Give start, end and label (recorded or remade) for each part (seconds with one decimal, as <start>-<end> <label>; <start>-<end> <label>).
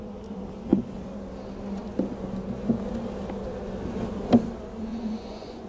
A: 0.0-4.9 recorded; 4.9-5.7 remade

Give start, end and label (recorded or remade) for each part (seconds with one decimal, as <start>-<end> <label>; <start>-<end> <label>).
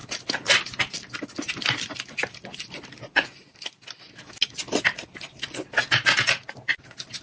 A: 0.0-7.2 recorded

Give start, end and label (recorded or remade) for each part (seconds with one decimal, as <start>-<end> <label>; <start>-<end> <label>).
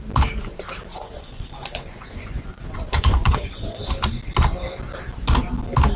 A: 0.0-0.9 recorded; 0.9-3.9 remade; 3.9-6.0 recorded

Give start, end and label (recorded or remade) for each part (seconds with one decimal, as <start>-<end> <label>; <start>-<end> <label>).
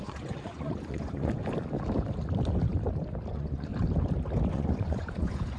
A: 0.0-1.4 remade; 1.4-3.3 recorded; 3.3-3.7 remade; 3.7-4.5 recorded; 4.5-5.6 remade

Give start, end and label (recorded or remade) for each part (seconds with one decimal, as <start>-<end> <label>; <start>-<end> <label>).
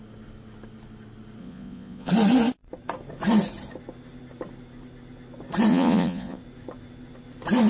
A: 0.0-1.4 recorded; 1.4-2.1 remade; 2.1-5.7 recorded; 5.7-6.4 remade; 6.4-7.7 recorded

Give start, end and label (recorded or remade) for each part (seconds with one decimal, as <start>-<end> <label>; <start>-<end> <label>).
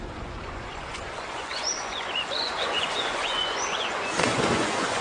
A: 0.0-5.0 remade